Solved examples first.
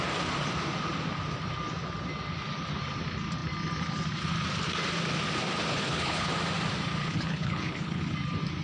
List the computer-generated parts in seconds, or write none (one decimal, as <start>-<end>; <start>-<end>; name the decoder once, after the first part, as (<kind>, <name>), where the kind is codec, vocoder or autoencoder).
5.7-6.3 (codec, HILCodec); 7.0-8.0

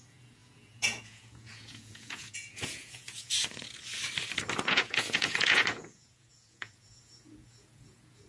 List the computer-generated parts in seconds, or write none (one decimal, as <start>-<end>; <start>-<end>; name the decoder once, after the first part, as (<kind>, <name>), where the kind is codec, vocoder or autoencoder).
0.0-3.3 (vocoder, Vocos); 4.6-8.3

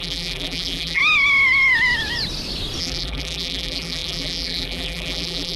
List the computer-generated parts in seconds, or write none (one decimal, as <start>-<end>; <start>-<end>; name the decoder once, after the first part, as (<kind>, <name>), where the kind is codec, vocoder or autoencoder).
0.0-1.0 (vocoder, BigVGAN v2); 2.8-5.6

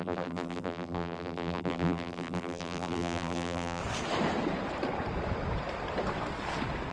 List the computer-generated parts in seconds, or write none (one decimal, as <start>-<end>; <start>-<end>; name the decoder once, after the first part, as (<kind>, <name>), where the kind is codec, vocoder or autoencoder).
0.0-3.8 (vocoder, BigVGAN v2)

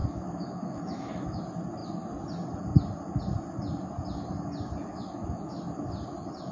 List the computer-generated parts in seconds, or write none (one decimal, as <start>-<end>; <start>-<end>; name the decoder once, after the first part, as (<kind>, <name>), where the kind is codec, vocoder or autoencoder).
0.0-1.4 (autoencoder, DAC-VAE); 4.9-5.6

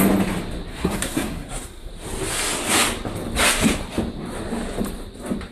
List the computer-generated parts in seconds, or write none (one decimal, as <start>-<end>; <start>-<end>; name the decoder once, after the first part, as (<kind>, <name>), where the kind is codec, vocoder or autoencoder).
0.7-1.9 (codec, SNAC)

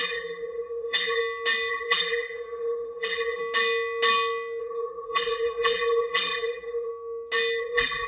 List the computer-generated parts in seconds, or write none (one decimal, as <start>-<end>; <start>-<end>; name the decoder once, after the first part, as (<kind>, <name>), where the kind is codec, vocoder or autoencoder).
0.0-1.2 (vocoder, BigVGAN v2); 1.7-3.4; 4.6-6.9; 7.6-8.1

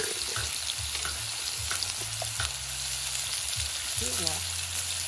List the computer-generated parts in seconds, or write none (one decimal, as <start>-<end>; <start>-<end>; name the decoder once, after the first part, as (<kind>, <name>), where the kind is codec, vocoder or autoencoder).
none